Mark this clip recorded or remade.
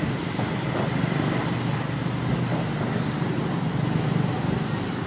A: recorded